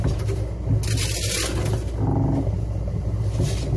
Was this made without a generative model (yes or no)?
yes